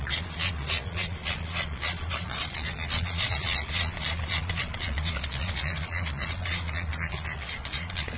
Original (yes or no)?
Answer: no